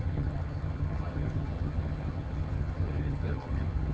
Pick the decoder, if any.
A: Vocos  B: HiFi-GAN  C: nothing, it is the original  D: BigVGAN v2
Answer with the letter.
B